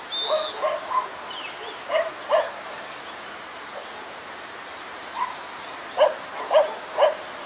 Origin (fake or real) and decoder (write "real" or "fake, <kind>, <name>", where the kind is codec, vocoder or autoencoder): real